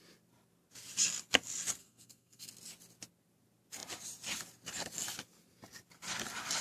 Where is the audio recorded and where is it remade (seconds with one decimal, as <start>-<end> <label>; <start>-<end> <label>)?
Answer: 0.0-1.8 recorded; 1.8-2.5 remade; 2.5-6.6 recorded